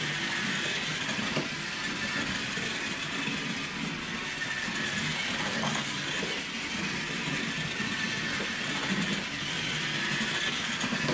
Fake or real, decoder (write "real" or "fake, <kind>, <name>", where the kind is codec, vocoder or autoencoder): real